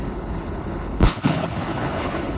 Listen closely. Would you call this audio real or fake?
fake